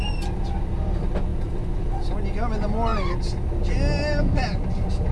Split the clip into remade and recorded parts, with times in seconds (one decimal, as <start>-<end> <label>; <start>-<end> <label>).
0.0-5.1 recorded